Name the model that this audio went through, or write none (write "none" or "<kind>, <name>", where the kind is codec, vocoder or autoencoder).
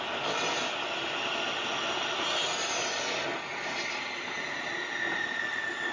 none